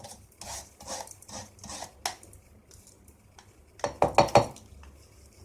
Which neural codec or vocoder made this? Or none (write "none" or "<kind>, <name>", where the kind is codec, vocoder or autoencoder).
none